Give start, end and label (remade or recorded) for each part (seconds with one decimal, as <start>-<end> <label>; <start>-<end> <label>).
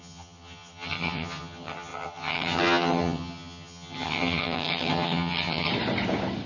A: 0.0-5.7 remade; 5.7-6.5 recorded